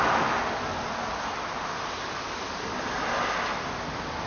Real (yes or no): yes